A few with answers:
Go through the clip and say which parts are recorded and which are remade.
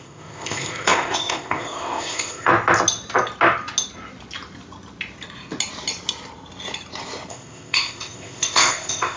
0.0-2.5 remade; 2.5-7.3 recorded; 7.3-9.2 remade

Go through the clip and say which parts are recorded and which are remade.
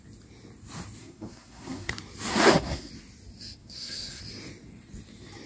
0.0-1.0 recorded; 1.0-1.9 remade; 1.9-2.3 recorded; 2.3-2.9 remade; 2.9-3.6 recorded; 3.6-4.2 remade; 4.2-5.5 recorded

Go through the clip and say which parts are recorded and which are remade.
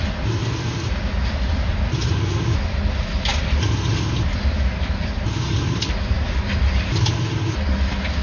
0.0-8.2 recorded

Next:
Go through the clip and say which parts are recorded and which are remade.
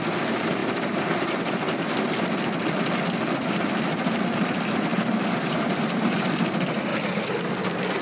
0.0-0.6 remade; 0.6-2.6 recorded; 2.6-6.9 remade; 6.9-8.0 recorded